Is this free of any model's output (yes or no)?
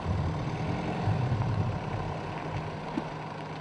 yes